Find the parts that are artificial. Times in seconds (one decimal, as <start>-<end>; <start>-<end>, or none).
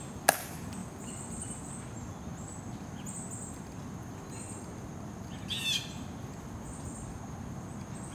0.8-1.7